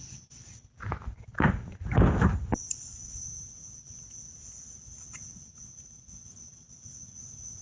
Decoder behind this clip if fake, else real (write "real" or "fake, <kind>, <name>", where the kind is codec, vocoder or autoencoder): real